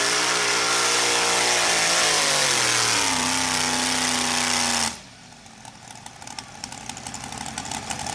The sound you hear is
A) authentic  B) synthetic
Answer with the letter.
A